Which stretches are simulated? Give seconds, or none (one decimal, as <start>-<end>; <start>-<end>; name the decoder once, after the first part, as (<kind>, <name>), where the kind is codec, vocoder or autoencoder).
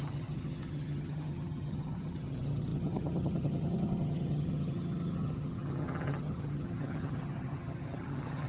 0.0-8.5 (vocoder, HiFi-GAN)